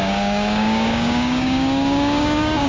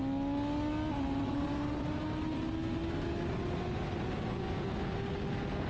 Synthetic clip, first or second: first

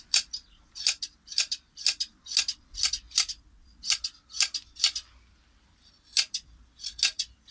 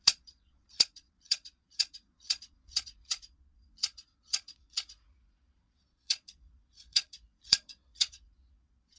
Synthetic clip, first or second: second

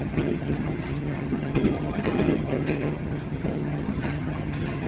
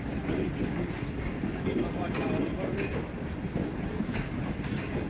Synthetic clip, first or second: first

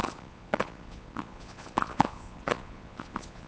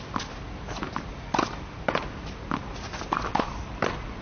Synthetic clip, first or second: first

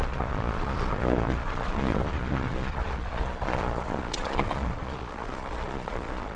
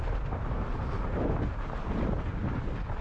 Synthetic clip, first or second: first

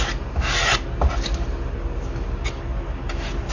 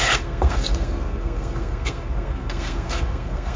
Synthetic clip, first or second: second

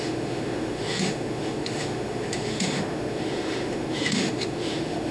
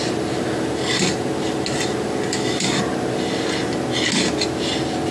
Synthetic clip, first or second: first